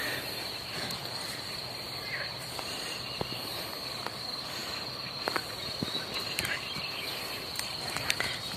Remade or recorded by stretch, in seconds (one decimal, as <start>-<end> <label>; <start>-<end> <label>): 0.0-1.0 recorded; 1.0-3.7 remade; 3.7-8.6 recorded